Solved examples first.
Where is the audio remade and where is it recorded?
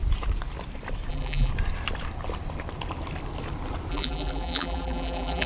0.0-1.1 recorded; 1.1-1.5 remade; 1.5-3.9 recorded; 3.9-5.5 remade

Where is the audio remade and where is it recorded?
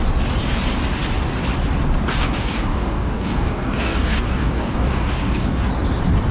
0.0-2.1 recorded; 2.1-5.7 remade; 5.7-6.3 recorded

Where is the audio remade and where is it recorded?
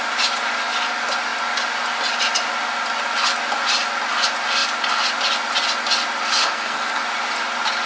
0.0-6.4 recorded; 6.4-7.0 remade; 7.0-7.9 recorded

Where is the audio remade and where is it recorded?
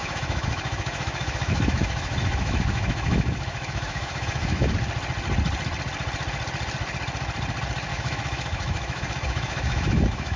0.0-4.7 remade; 4.7-7.9 recorded; 7.9-10.4 remade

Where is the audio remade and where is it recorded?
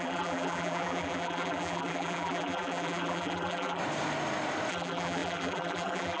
0.0-3.8 remade; 3.8-4.7 recorded; 4.7-6.2 remade